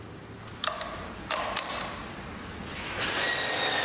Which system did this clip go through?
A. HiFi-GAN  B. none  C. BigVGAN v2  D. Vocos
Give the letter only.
B